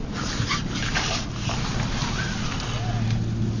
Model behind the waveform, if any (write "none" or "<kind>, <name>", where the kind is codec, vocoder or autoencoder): none